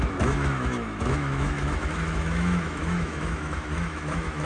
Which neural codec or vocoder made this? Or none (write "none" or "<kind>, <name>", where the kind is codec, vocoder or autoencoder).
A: autoencoder, DAC-VAE